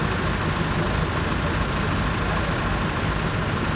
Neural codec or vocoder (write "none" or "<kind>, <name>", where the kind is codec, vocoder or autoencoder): none